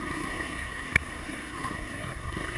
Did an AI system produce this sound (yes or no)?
yes